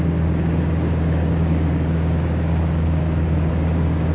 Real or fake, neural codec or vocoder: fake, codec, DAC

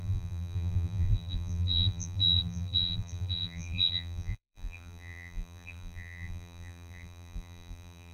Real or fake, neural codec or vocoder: fake, vocoder, BigVGAN v2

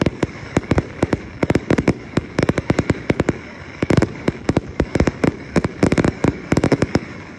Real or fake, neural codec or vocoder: fake, codec, DAC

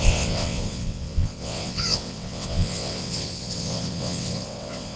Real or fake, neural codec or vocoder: fake, vocoder, WaveNeXt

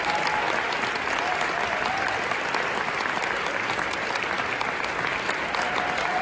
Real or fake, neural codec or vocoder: real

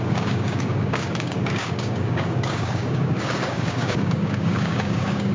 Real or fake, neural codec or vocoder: fake, codec, DAC